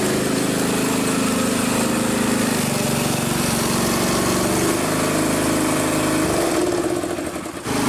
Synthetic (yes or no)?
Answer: no